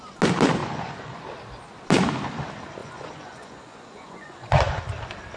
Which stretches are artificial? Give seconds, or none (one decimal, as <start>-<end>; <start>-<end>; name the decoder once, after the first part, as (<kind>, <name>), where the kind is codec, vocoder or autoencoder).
0.6-1.2 (vocoder, Vocos); 2.8-4.8